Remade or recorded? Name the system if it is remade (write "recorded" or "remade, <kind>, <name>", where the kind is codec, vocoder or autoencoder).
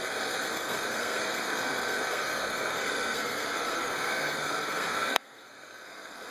remade, codec, SNAC